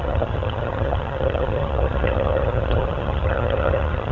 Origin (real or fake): fake